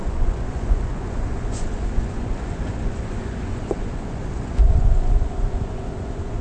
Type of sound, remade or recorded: remade